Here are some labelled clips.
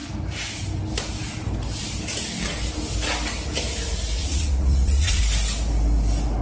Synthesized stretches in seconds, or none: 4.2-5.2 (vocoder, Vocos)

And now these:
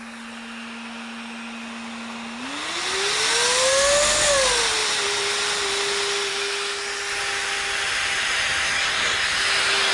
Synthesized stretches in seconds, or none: none

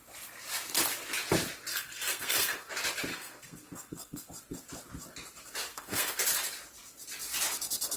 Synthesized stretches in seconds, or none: 1.7-2.7 (codec, SNAC); 3.1-4.3; 5.7-6.2

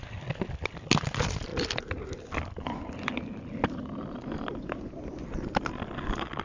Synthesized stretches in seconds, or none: none